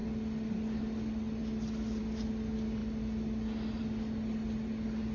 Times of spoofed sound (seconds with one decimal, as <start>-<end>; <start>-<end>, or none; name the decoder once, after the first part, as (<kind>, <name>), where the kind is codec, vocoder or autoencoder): none